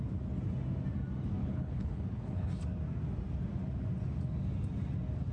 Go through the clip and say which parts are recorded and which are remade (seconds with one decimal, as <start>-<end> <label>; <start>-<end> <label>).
0.0-1.4 recorded; 1.4-2.5 remade; 2.5-5.3 recorded